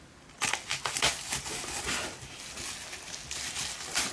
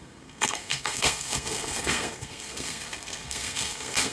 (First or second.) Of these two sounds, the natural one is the first